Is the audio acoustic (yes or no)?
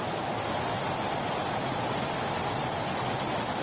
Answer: yes